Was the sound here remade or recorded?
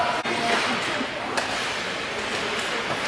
recorded